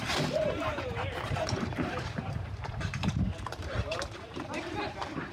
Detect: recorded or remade remade